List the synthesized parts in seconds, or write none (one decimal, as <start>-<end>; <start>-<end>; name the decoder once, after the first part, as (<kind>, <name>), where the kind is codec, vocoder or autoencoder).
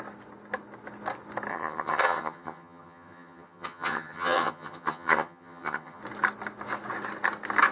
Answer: 1.5-6.0 (vocoder, HiFi-GAN)